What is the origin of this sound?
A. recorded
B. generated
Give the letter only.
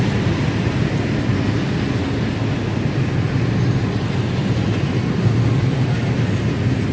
A